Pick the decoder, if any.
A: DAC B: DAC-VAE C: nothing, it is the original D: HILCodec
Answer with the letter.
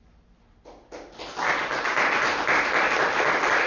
C